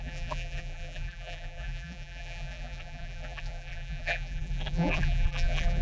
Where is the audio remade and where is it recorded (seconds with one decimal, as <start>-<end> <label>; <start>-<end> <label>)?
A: 0.0-5.8 remade